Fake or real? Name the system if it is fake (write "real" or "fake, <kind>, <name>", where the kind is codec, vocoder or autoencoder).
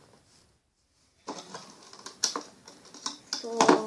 real